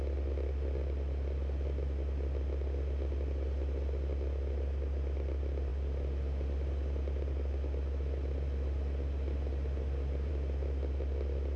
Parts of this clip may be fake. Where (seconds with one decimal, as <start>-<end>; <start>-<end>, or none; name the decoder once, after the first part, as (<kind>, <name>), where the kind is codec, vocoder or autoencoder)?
none